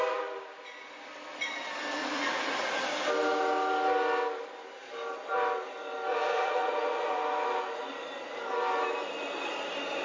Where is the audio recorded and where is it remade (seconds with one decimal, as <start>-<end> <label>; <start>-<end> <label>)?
0.0-2.0 recorded; 2.0-2.8 remade; 2.8-6.1 recorded; 6.1-7.2 remade; 7.2-10.0 recorded